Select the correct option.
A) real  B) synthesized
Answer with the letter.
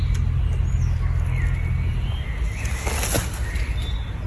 A